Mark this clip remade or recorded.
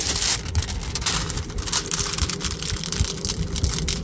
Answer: recorded